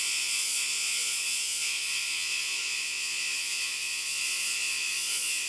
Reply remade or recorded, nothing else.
remade